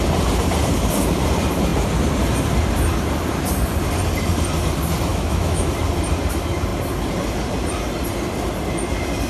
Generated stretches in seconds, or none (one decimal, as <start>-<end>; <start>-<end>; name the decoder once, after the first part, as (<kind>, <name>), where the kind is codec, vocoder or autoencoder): 5.1-5.7 (autoencoder, DAC-VAE)